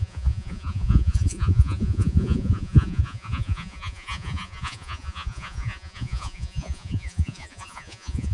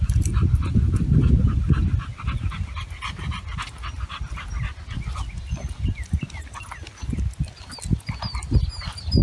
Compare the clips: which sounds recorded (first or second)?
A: second